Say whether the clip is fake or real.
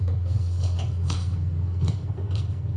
fake